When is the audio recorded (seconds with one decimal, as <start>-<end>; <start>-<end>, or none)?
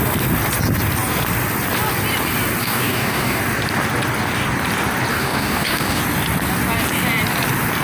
0.0-2.6; 3.4-5.1; 6.0-7.8